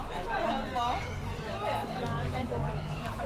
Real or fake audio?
fake